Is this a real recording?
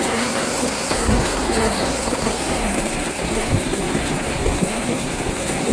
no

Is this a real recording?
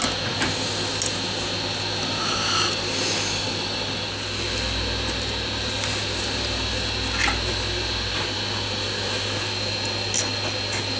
yes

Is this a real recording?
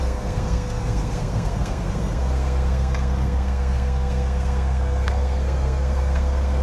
no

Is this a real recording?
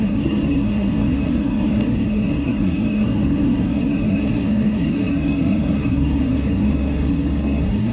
no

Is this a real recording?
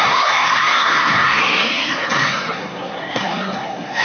no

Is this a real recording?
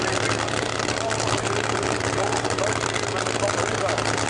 yes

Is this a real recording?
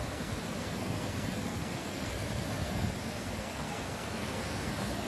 no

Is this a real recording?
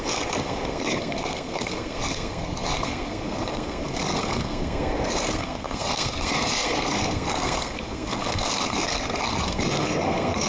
no